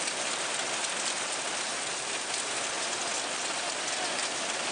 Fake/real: real